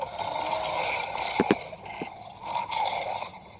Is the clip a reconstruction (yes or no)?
no